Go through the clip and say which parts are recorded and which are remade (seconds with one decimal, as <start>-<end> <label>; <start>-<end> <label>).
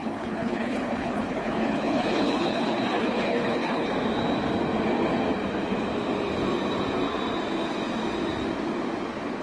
0.0-3.9 remade; 3.9-9.4 recorded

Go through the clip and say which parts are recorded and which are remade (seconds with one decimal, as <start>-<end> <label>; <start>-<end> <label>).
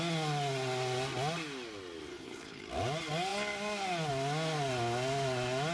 0.0-2.1 recorded; 2.1-2.6 remade; 2.6-5.7 recorded